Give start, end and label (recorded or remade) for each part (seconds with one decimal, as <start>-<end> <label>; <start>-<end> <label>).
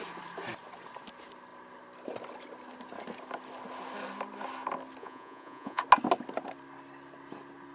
0.0-5.0 recorded; 5.0-5.8 remade; 5.8-7.7 recorded